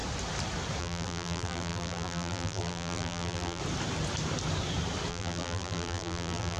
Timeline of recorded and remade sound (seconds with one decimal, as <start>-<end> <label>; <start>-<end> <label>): 0.0-0.8 recorded; 0.8-3.6 remade; 3.6-5.1 recorded; 5.1-6.6 remade